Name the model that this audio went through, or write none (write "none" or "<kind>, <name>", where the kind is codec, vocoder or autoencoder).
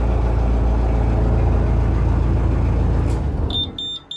none